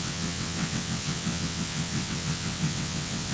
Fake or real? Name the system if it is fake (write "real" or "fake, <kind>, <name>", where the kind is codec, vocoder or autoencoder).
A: fake, vocoder, WaveNeXt